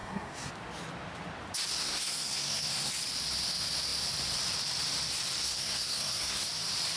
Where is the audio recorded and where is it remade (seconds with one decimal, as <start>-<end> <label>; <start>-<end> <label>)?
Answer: 0.0-0.5 remade; 0.5-1.8 recorded; 1.8-2.9 remade; 2.9-5.4 recorded; 5.4-6.5 remade; 6.5-7.0 recorded